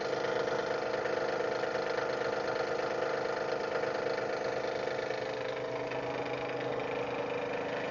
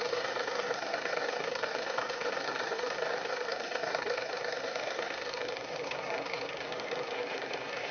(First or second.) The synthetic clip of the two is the second